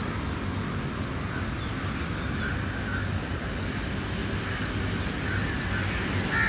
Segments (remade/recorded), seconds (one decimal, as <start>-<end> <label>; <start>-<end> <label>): 0.0-6.5 recorded

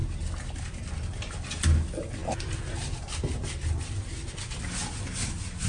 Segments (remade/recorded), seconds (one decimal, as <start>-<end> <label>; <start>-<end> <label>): 0.0-5.7 recorded

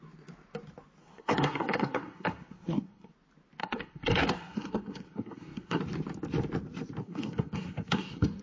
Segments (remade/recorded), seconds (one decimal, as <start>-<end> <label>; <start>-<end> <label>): 0.0-1.0 recorded; 1.0-3.1 remade; 3.1-3.6 recorded; 3.6-5.8 remade; 5.8-7.0 recorded; 7.0-8.4 remade

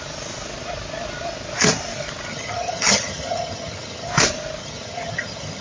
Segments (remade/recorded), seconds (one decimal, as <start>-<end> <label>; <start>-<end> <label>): 0.0-2.3 recorded; 2.3-4.1 remade; 4.1-4.6 recorded; 4.6-5.6 remade

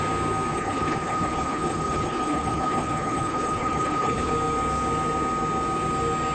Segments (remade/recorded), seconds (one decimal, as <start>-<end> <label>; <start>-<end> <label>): 0.0-0.5 recorded; 0.5-4.3 remade; 4.3-6.3 recorded

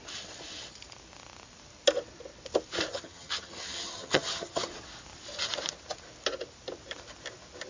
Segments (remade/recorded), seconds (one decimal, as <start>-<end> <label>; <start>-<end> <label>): 0.0-2.9 recorded; 2.9-4.7 remade; 4.7-7.7 recorded